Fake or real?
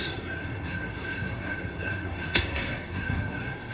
fake